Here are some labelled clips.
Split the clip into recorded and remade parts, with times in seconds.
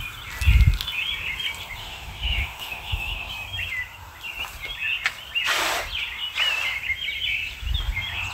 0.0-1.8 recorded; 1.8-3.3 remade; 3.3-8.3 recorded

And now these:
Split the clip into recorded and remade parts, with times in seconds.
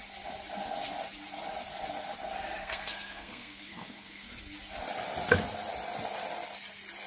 0.0-2.6 recorded; 2.6-4.3 remade; 4.3-7.1 recorded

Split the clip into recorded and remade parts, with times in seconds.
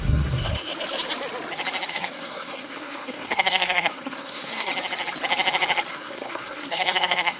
0.0-0.7 remade; 0.7-1.9 recorded; 1.9-4.7 remade; 4.7-5.9 recorded; 5.9-7.4 remade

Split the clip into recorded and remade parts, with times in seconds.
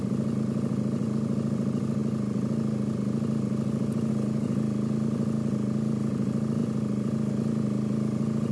0.0-8.5 recorded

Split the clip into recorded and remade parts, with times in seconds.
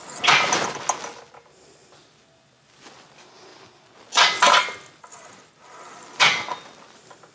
0.0-7.3 recorded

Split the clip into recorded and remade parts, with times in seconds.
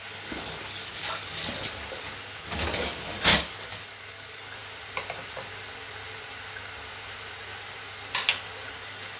0.0-1.4 remade; 1.4-2.0 recorded; 2.0-4.6 remade; 4.6-8.7 recorded; 8.7-9.2 remade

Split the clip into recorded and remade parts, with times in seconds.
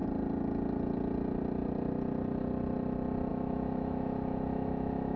0.0-3.3 recorded; 3.3-5.2 remade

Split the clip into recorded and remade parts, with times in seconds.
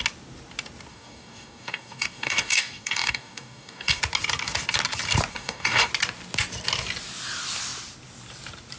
0.0-0.9 recorded; 0.9-4.0 remade; 4.0-5.3 recorded; 5.3-5.9 remade; 5.9-8.8 recorded